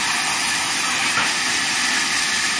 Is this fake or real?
real